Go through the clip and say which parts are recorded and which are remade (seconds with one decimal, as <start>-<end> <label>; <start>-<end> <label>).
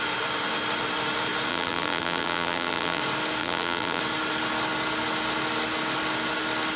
0.0-1.5 recorded; 1.5-3.0 remade; 3.0-3.4 recorded; 3.4-4.0 remade; 4.0-6.8 recorded